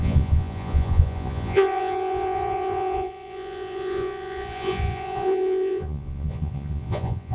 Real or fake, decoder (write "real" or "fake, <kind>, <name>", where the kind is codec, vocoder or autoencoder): fake, vocoder, Vocos